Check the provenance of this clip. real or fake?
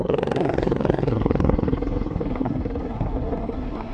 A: fake